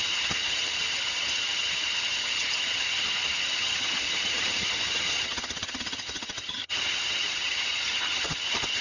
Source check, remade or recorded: remade